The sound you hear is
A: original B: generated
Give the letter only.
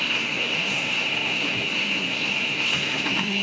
B